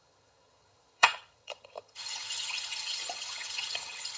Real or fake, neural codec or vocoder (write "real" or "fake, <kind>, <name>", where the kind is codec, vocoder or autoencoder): fake, vocoder, HiFi-GAN